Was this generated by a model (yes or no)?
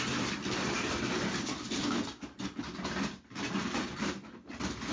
no